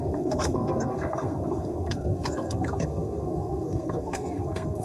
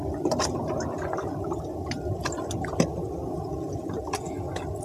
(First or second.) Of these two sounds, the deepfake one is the first